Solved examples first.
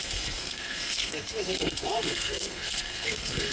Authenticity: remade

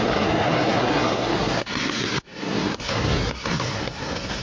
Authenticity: remade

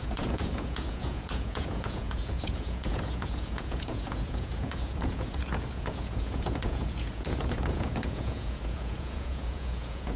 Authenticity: remade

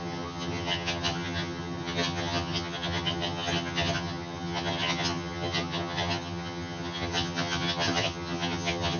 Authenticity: remade